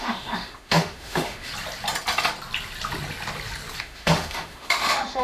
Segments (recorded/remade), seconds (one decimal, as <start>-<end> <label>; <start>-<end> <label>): 0.0-1.5 remade; 1.5-3.8 recorded; 3.8-5.2 remade